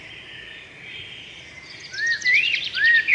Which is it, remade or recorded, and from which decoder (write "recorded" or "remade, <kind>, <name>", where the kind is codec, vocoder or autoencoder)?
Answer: recorded